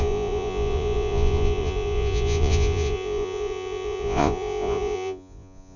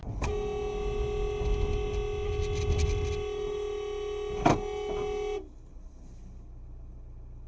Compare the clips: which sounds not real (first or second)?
first